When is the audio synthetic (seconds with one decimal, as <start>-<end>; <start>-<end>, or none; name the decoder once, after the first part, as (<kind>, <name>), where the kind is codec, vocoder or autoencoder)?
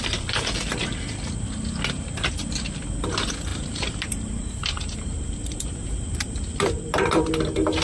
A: 3.5-7.2 (vocoder, BigVGAN v2)